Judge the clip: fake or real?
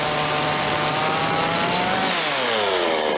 real